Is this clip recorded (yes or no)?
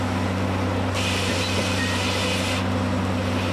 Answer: yes